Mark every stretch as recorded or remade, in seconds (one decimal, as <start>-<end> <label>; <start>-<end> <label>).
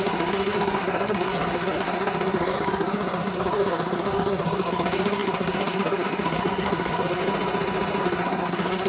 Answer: 0.0-7.2 remade; 7.2-8.0 recorded; 8.0-8.9 remade